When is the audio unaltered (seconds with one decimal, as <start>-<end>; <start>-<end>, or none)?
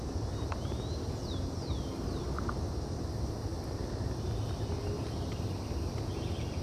0.0-1.2; 2.7-3.5; 5.7-6.6